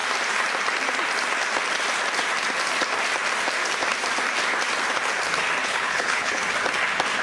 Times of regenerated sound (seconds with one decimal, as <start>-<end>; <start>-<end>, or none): 5.6-6.4